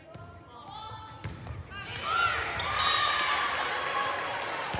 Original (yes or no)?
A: yes